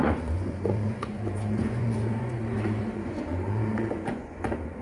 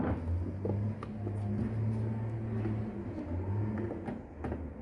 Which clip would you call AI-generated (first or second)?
first